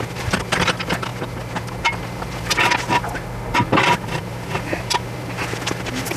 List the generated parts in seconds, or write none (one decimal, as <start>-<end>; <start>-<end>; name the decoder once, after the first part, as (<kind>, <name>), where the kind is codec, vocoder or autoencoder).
none